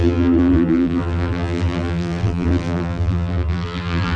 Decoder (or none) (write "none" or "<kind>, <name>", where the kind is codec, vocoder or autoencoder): vocoder, BigVGAN v2